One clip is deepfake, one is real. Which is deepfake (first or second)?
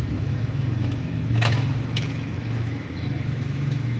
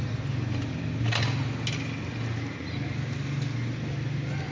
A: first